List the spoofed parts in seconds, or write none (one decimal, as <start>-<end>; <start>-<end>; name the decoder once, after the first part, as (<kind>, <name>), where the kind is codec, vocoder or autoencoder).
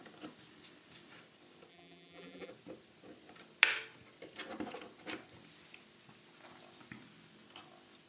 1.7-2.5 (vocoder, BigVGAN v2)